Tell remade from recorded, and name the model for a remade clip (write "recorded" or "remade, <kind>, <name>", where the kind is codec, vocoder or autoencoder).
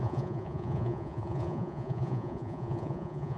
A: remade, vocoder, Vocos